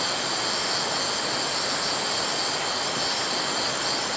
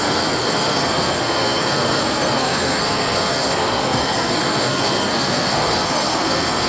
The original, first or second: first